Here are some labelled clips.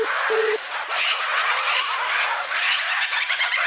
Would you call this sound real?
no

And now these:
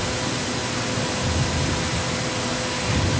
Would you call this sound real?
yes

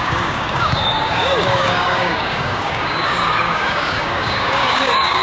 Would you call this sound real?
no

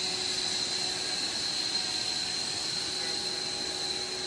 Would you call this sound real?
yes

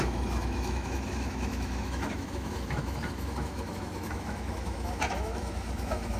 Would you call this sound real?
no